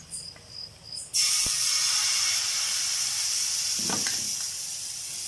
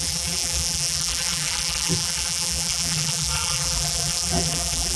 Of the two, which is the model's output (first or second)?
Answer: second